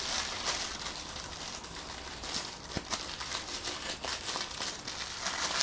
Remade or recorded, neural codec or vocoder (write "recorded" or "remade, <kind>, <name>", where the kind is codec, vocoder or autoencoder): recorded